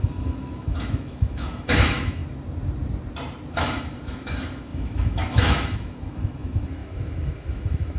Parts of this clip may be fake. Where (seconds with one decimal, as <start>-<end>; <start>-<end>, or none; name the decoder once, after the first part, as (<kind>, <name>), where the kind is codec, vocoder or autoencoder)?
0.0-2.2 (autoencoder, DAC-VAE); 3.5-8.0